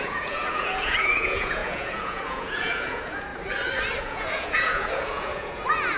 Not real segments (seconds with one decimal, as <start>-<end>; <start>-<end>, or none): 0.0-3.3; 4.0-6.0